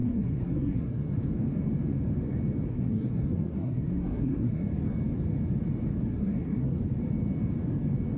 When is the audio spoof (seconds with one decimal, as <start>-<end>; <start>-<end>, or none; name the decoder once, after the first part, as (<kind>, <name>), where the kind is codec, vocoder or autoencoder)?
0.0-1.2 (codec, SNAC); 2.7-4.7; 6.0-6.8